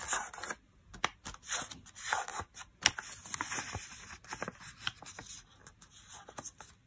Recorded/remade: recorded